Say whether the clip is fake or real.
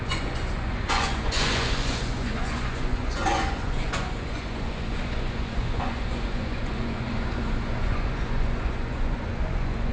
fake